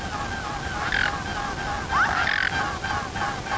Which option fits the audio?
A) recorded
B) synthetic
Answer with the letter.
A